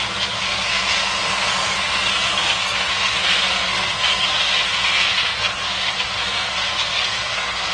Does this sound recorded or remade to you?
remade